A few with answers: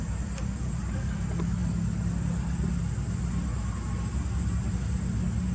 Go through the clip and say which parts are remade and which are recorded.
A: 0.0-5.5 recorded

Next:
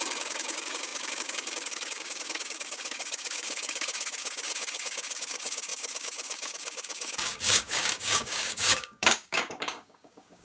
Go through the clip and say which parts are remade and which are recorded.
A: 0.0-10.4 remade

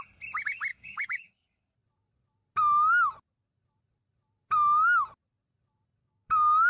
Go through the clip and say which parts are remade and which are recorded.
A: 0.0-0.7 recorded; 0.7-1.3 remade; 1.3-6.0 recorded; 6.0-6.7 remade

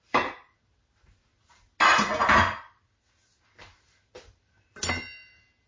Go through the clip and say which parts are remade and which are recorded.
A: 0.0-5.7 recorded

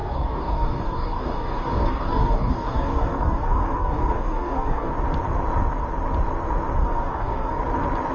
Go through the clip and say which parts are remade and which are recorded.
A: 0.0-4.9 remade; 4.9-6.8 recorded; 6.8-7.6 remade; 7.6-8.1 recorded

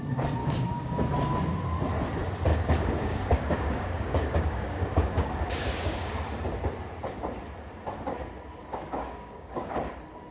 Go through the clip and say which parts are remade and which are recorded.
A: 0.0-0.4 recorded; 0.4-1.1 remade; 1.1-2.5 recorded; 2.5-6.1 remade; 6.1-8.7 recorded; 8.7-9.9 remade; 9.9-10.3 recorded

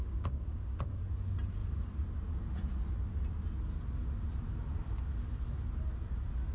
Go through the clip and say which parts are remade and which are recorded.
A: 0.0-1.0 remade; 1.0-6.5 recorded

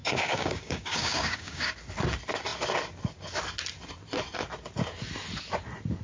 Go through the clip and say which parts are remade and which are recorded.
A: 0.0-1.7 remade; 1.7-6.0 recorded